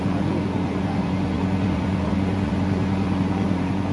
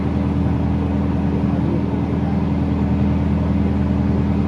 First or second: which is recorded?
second